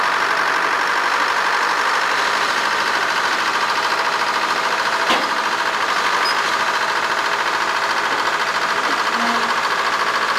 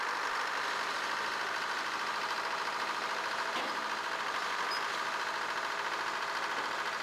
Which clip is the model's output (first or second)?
second